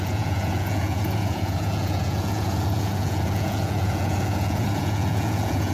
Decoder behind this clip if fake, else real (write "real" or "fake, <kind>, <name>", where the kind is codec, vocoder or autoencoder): fake, vocoder, Vocos